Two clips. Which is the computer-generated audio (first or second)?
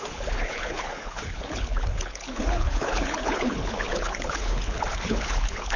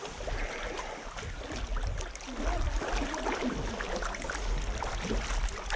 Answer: first